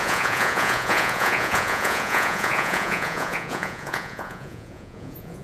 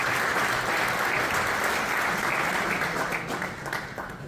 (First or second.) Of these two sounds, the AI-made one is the first